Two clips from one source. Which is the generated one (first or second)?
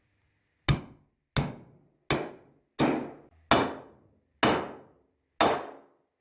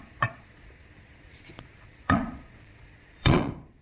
second